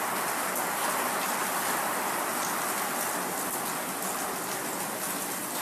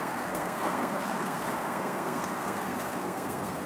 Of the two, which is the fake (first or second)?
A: second